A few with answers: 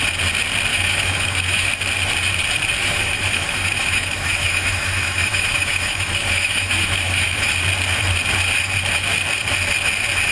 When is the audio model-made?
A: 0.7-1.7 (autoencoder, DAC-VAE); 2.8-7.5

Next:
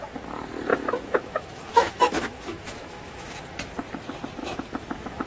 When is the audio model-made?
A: 0.7-3.4 (autoencoder, DAC-VAE); 4.4-5.3

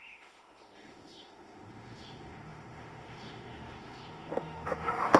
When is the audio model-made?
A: 0.0-5.2 (autoencoder, DAC-VAE)

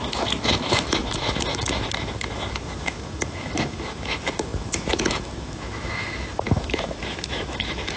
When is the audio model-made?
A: 0.0-8.0 (autoencoder, DAC-VAE)